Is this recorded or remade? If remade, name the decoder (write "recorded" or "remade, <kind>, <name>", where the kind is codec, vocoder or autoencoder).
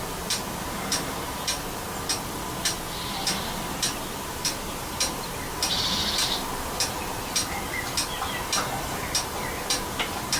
recorded